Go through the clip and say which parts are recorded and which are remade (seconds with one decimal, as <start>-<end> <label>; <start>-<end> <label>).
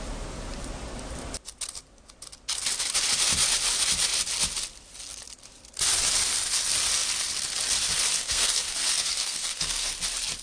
0.0-8.2 recorded; 8.2-9.9 remade; 9.9-10.4 recorded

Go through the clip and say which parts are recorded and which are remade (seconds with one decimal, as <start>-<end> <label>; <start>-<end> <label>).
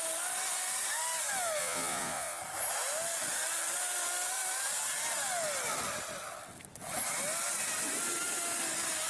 0.0-1.6 recorded; 1.6-2.4 remade; 2.4-9.1 recorded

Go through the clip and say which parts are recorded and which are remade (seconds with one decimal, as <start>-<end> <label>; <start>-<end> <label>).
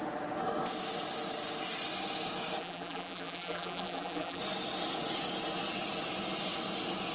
0.0-2.6 recorded; 2.6-4.4 remade; 4.4-7.1 recorded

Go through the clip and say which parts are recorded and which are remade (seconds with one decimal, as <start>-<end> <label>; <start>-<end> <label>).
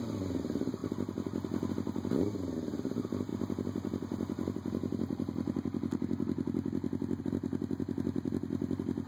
0.0-9.1 recorded